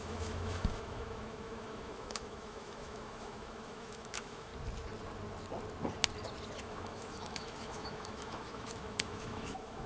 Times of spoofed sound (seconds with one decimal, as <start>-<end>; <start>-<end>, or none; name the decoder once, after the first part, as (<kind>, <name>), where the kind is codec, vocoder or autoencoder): 0.0-4.5 (autoencoder, DAC-VAE); 6.6-9.9